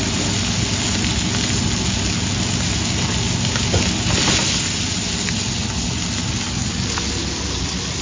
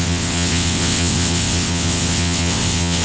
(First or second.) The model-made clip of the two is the second